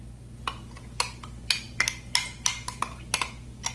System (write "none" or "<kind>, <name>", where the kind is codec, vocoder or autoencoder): none